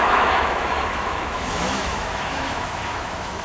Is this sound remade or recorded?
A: remade